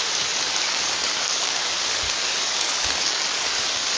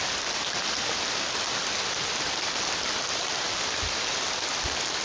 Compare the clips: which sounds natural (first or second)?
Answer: second